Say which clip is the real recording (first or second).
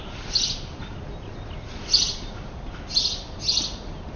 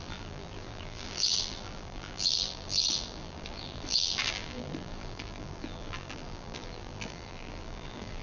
first